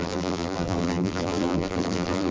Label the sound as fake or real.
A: fake